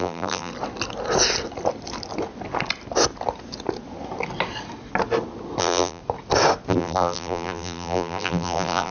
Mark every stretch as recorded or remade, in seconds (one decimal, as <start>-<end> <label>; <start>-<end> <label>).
0.0-0.5 remade; 0.5-5.6 recorded; 5.6-6.0 remade; 6.0-6.7 recorded; 6.7-8.9 remade